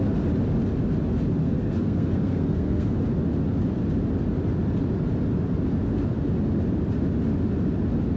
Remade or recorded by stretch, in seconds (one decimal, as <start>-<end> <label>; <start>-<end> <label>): 0.0-1.4 recorded; 1.4-3.0 remade; 3.0-8.2 recorded